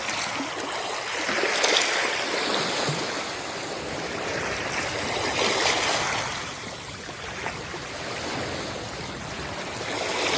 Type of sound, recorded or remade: recorded